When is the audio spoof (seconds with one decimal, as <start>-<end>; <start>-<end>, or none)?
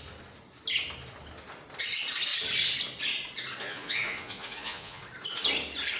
3.6-5.0